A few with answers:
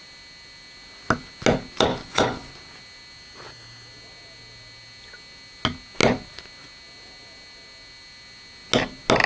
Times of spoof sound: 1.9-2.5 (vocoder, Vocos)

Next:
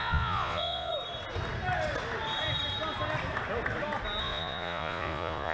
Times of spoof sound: 0.0-0.9 (vocoder, Vocos); 4.2-5.5

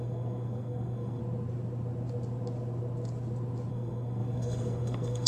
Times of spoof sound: 0.0-1.2 (codec, SNAC); 3.7-5.3

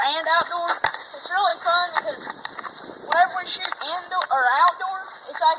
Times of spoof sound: none

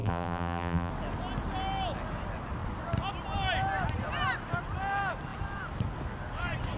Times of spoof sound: 0.0-0.9 (vocoder, BigVGAN v2)